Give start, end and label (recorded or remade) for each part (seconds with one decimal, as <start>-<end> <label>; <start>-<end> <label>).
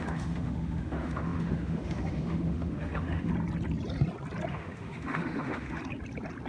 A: 0.0-3.3 remade; 3.3-4.5 recorded; 4.5-5.8 remade; 5.8-6.5 recorded